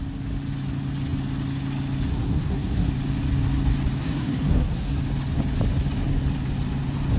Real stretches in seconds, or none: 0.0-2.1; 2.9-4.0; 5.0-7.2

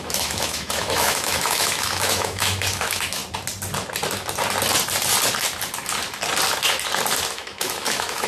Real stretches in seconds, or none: 3.2-7.3

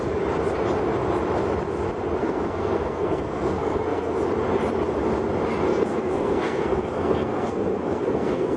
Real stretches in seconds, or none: 0.0-2.2; 4.2-5.7